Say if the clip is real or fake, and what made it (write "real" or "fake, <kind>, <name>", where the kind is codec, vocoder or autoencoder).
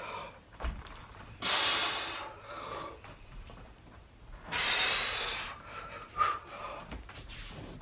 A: fake, vocoder, BigVGAN v2